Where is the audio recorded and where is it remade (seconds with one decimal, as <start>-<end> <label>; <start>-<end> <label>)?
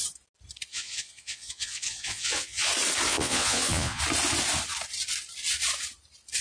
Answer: 0.0-0.7 recorded; 0.7-2.7 remade; 2.7-3.1 recorded; 3.1-4.0 remade; 4.0-6.4 recorded